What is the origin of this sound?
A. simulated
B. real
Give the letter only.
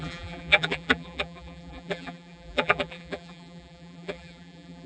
A